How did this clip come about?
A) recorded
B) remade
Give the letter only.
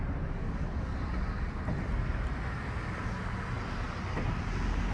A